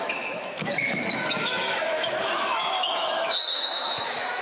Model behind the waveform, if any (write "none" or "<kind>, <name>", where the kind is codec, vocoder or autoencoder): autoencoder, DAC-VAE